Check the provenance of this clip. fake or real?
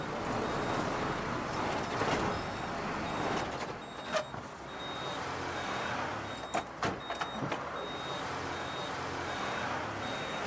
real